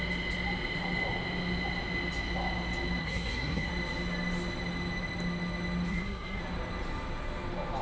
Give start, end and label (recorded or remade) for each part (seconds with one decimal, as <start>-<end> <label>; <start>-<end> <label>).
0.0-3.0 recorded; 3.0-3.7 remade; 3.7-5.9 recorded; 5.9-6.4 remade; 6.4-7.8 recorded